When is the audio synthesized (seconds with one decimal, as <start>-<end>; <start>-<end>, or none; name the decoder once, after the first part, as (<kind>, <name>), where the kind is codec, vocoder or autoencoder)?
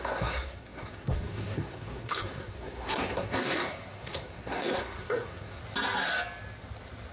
0.0-5.6 (codec, SNAC)